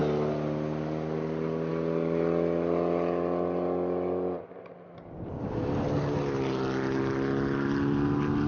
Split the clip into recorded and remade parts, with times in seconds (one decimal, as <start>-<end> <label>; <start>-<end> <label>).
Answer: 0.0-8.5 recorded